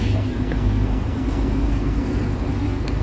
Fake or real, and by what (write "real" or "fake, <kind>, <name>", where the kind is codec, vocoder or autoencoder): fake, codec, SNAC